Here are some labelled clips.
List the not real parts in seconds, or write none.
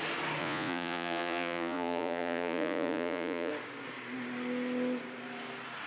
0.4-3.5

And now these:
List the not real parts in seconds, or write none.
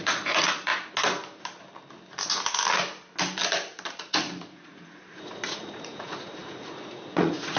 0.0-0.7; 3.9-7.6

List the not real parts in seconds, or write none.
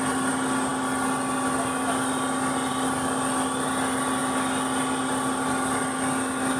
none